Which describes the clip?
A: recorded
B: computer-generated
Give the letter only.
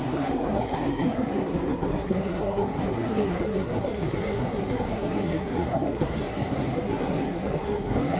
B